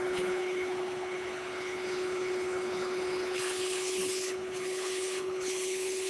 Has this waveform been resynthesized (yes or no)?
yes